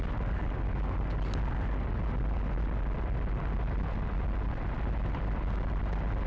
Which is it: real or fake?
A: real